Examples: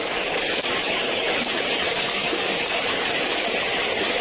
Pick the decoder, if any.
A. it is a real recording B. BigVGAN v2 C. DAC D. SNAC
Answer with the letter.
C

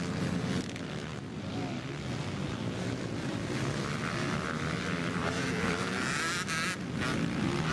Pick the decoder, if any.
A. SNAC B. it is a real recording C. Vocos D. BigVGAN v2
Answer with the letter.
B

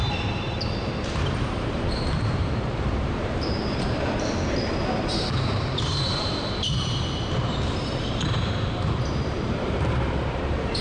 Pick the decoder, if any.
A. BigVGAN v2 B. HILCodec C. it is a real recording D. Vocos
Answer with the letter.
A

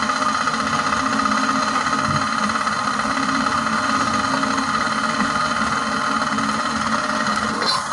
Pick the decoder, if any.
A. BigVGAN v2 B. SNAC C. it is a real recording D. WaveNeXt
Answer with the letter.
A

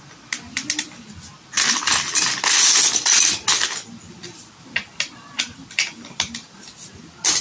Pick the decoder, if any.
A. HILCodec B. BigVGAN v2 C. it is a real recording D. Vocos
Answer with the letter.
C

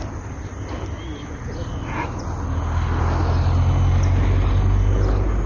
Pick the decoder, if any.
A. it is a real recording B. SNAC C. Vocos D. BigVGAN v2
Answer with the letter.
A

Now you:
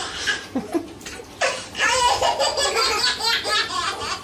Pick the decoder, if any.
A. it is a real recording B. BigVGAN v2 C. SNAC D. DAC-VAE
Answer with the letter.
B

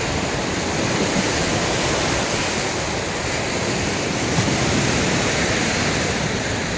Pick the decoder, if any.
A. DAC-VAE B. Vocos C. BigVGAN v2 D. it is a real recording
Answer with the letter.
D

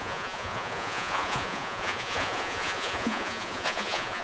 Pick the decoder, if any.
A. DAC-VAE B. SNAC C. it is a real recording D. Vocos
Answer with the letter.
D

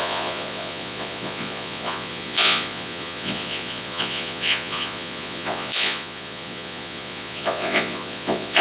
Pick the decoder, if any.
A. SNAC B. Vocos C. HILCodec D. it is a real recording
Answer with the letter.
B